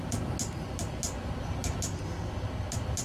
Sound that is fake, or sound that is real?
real